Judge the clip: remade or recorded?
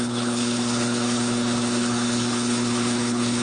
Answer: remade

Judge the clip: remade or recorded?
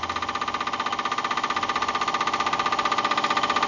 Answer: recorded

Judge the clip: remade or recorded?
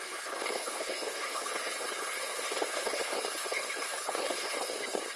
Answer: remade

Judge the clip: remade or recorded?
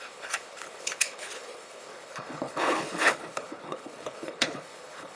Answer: remade